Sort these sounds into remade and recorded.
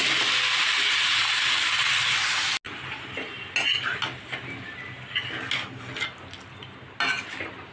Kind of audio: recorded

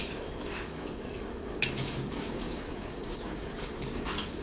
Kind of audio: remade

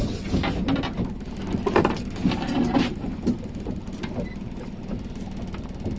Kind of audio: recorded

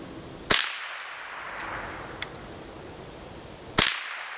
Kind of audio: recorded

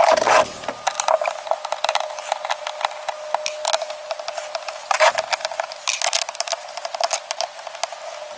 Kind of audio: recorded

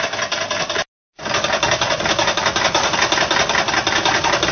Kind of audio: recorded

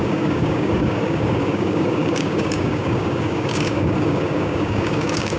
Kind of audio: remade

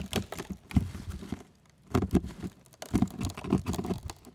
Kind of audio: recorded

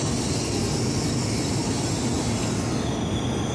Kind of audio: recorded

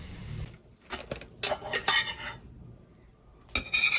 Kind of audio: recorded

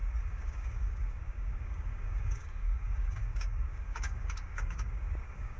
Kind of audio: remade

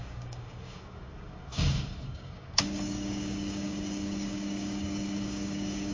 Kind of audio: remade